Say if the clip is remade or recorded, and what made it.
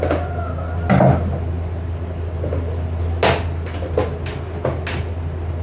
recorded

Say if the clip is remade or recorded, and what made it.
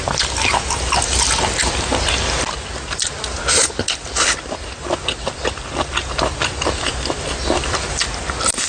recorded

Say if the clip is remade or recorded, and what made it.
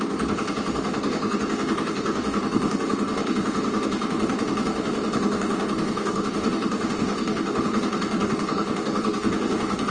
remade, codec, DAC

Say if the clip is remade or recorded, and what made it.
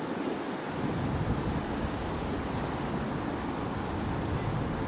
recorded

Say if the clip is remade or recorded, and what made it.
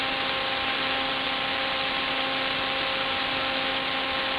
recorded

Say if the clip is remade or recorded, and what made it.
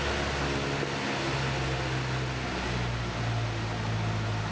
recorded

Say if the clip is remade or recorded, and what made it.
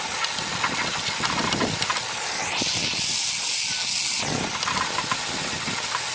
recorded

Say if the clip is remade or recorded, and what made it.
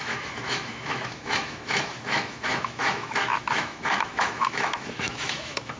remade, autoencoder, DAC-VAE